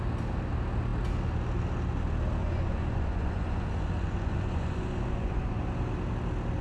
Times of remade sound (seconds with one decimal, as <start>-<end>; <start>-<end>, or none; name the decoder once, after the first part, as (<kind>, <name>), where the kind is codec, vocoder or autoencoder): 2.4-5.6 (vocoder, Vocos)